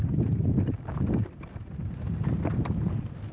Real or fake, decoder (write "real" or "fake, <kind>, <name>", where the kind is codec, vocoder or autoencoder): real